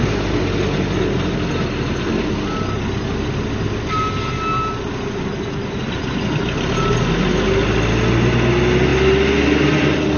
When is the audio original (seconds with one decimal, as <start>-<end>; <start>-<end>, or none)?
0.0-10.2